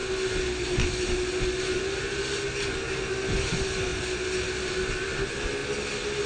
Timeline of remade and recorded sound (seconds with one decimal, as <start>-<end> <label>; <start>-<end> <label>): 0.0-6.3 recorded